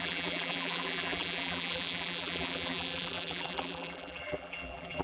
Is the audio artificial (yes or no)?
yes